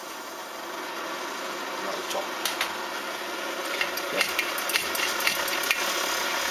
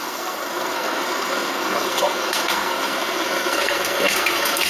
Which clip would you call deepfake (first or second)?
second